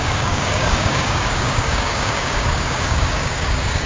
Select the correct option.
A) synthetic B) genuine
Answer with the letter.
A